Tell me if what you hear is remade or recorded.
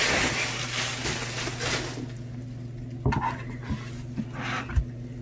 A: recorded